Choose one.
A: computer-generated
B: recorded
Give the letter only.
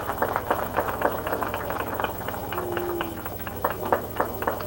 A